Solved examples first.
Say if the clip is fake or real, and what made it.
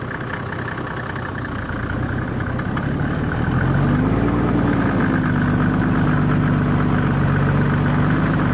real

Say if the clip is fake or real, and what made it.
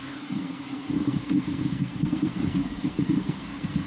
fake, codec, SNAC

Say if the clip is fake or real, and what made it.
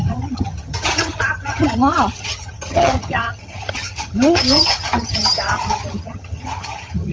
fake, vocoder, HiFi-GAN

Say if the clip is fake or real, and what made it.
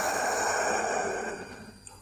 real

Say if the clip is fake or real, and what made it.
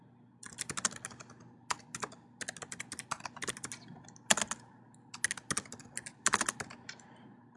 real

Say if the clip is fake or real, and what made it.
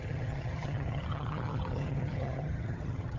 fake, vocoder, HiFi-GAN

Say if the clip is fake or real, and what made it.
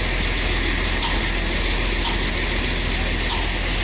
real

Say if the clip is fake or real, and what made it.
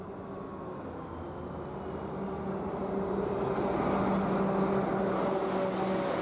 real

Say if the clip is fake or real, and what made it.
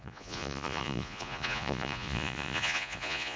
fake, vocoder, Vocos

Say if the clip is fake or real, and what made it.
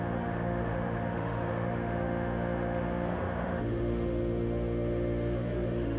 fake, autoencoder, DAC-VAE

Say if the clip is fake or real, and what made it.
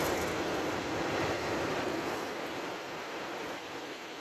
real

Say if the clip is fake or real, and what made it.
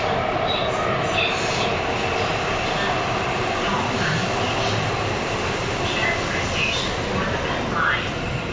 real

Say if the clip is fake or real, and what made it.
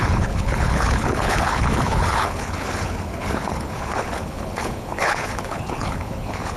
fake, codec, HILCodec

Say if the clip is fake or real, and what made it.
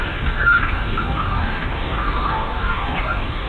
fake, codec, DAC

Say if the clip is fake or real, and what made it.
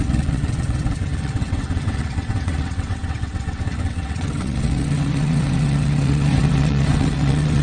fake, vocoder, WaveNeXt